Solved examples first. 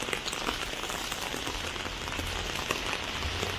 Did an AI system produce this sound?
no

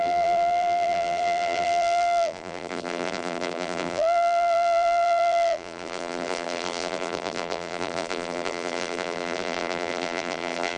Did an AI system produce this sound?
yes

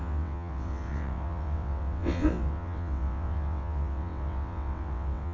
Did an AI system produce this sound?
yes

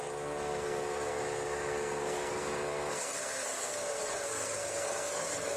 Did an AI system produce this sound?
yes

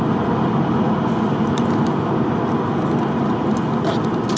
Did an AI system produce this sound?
no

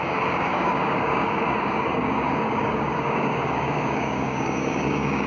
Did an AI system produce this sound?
yes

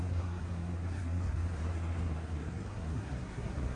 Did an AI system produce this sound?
yes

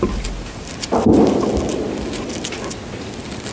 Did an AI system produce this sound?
yes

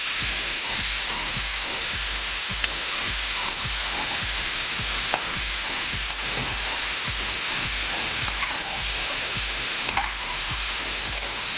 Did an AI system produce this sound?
yes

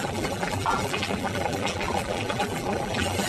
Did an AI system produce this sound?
yes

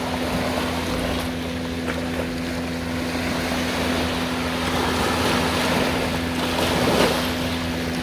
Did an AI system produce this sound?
no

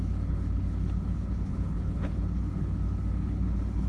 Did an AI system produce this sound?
yes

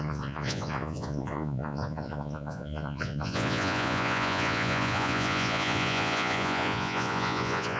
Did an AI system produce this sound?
yes